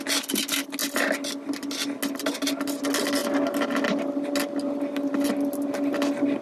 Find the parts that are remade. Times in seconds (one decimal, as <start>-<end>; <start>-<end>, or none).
none